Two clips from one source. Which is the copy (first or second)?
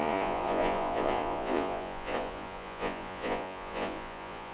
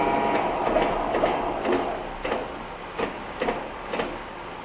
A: first